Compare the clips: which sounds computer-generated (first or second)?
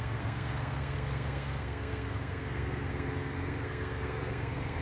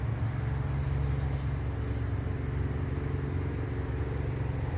first